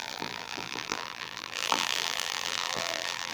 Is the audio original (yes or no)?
no